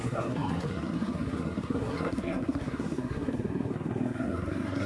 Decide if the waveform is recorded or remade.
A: remade